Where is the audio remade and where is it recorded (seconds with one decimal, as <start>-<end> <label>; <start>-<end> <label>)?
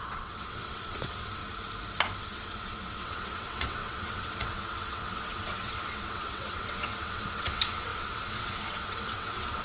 0.0-1.4 remade; 1.4-2.2 recorded; 2.2-9.6 remade